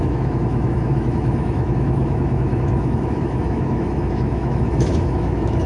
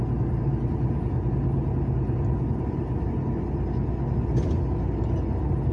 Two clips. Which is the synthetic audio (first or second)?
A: first